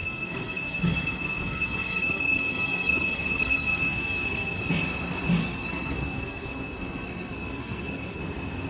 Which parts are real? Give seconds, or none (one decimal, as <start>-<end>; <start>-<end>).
4.6-5.4; 8.2-8.7